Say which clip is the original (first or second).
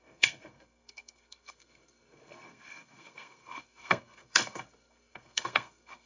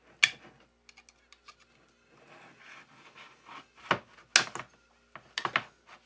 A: second